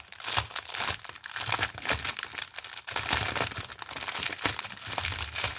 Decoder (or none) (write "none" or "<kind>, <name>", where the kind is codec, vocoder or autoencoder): none